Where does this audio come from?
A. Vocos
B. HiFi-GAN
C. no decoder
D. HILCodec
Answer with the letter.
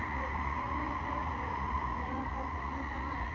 A